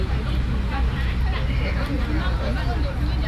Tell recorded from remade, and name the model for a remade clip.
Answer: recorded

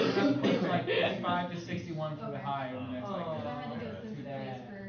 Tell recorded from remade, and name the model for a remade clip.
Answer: recorded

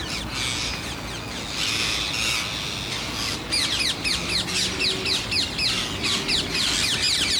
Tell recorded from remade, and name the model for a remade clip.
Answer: recorded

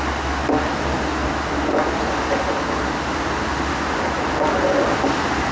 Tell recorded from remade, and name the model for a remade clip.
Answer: recorded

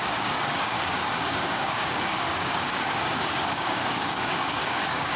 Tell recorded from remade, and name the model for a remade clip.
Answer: remade, codec, DAC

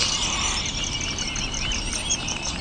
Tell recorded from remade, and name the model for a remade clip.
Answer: remade, vocoder, BigVGAN v2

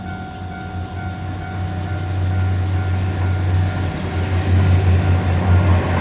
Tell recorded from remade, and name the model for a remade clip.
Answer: recorded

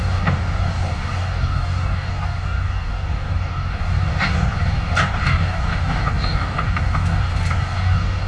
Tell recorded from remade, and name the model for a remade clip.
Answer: remade, codec, DAC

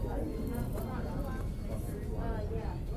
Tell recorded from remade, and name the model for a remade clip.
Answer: recorded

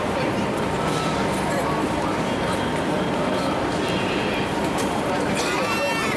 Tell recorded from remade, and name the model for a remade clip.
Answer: remade, vocoder, BigVGAN v2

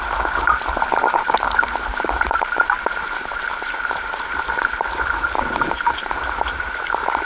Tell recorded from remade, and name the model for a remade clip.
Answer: remade, vocoder, BigVGAN v2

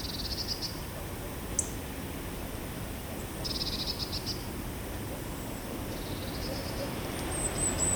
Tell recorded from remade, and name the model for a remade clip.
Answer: recorded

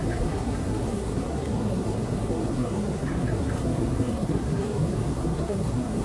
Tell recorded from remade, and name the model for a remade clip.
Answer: remade, codec, SNAC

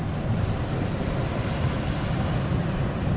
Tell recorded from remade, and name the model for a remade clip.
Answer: recorded